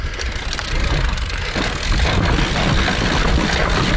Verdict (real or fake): real